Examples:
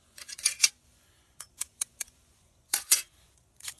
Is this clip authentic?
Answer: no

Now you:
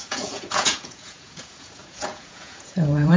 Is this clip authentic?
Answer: no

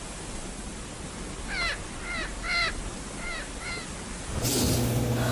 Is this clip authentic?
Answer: yes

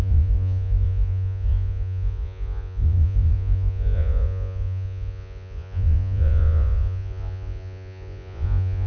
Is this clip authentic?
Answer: no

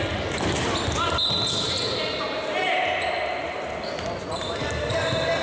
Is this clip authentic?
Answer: yes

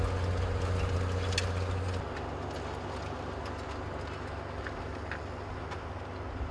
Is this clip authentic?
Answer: yes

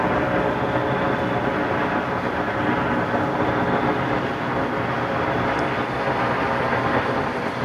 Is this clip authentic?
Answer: yes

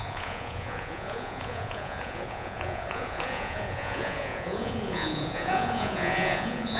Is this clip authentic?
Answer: no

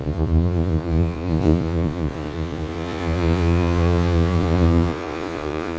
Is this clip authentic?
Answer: no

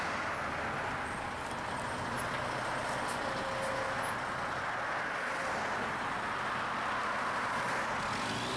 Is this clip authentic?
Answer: yes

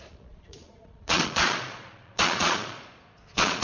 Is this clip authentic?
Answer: no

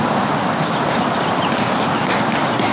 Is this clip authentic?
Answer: yes